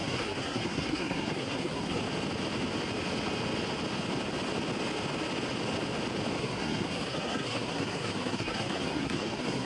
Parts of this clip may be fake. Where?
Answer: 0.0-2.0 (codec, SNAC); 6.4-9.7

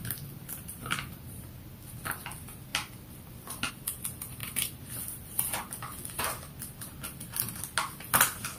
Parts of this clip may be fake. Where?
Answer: 0.4-1.4 (vocoder, BigVGAN v2)

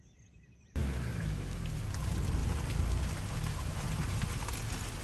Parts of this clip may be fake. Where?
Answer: 0.8-1.8 (autoencoder, DAC-VAE)

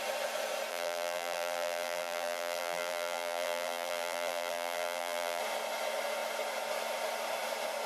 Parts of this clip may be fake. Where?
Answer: 0.7-5.4 (vocoder, BigVGAN v2)

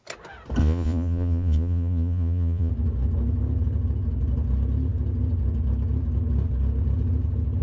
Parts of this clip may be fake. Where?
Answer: 0.6-2.7 (vocoder, Vocos)

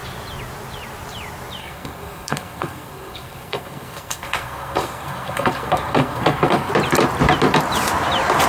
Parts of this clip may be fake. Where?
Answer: 1.6-6.7 (codec, SNAC)

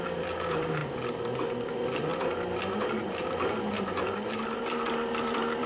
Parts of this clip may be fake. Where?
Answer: 0.0-0.8 (vocoder, BigVGAN v2); 1.5-2.1; 4.6-5.7

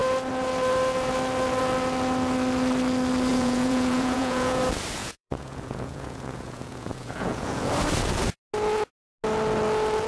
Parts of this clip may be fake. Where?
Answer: 3.3-4.6 (vocoder, Vocos); 5.0-7.7